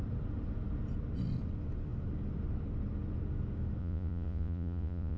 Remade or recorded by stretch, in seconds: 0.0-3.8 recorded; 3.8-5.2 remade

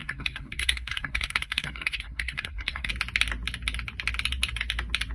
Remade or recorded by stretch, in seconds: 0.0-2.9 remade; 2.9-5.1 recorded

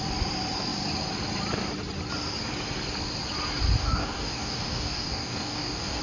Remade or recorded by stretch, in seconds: 0.0-3.8 recorded; 3.8-6.0 remade